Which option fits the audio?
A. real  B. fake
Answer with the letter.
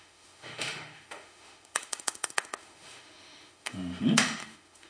B